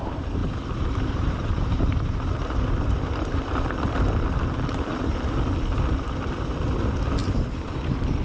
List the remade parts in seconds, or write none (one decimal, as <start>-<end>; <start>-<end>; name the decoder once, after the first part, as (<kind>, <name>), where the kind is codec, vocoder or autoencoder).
0.4-3.0 (vocoder, BigVGAN v2); 7.2-7.7